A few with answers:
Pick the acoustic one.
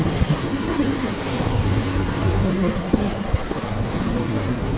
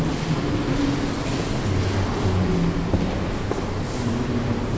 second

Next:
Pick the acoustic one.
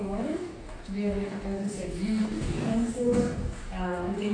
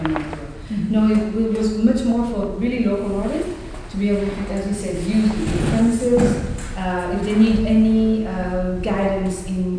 second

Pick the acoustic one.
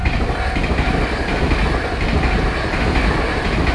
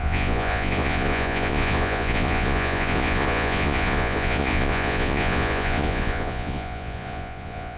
first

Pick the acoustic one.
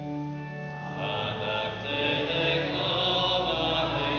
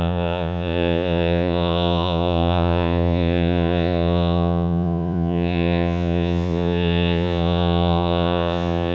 first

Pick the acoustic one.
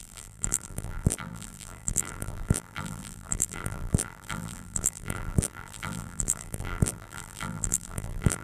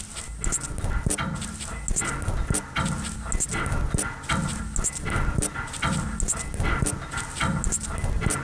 second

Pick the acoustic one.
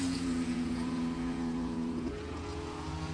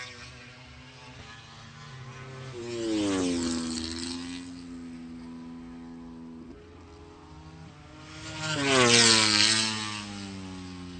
second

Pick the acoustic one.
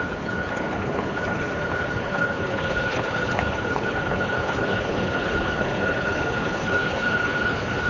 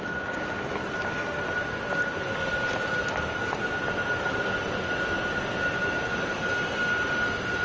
second